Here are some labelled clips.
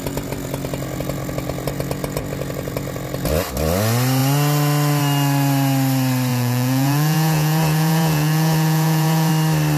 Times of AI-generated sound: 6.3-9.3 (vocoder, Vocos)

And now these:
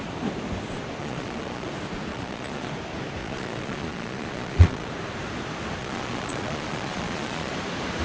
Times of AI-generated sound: 1.0-1.7 (vocoder, Vocos); 2.1-2.7; 3.2-4.9; 5.8-7.5

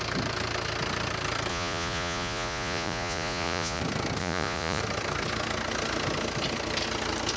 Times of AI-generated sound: 1.5-3.8 (vocoder, Vocos); 4.2-4.8

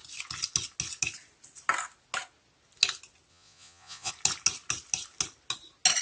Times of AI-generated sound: 3.3-4.1 (vocoder, Vocos)

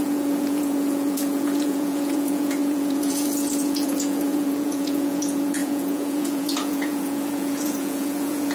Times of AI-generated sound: 0.0-8.5 (vocoder, Vocos)

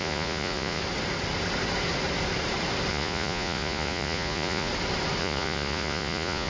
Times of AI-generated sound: 0.0-0.8 (vocoder, Vocos); 2.9-4.7; 5.2-6.5

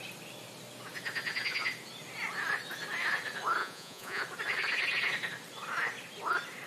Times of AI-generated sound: 3.6-4.2 (vocoder, Vocos)

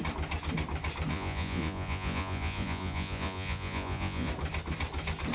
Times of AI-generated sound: 1.1-4.3 (vocoder, Vocos)